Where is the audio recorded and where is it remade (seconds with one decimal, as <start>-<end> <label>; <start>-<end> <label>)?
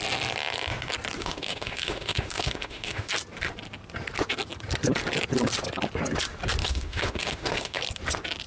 0.0-1.2 recorded; 1.2-3.1 remade; 3.1-6.6 recorded; 6.6-7.8 remade; 7.8-8.5 recorded